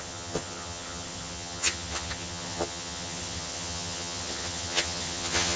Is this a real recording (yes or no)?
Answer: no